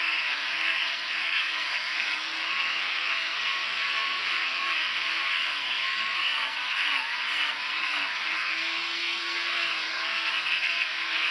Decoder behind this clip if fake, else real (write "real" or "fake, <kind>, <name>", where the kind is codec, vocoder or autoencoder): fake, codec, SNAC